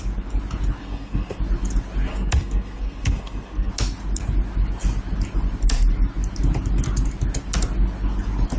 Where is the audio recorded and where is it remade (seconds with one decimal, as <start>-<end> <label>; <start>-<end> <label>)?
0.0-0.8 recorded; 0.8-1.4 remade; 1.4-2.1 recorded; 2.1-3.7 remade; 3.7-8.6 recorded